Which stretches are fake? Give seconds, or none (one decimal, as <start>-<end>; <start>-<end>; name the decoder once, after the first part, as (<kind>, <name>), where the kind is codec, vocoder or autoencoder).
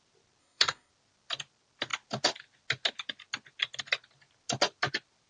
0.4-0.9 (codec, SNAC)